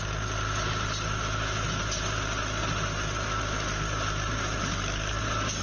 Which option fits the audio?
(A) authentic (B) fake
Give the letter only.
A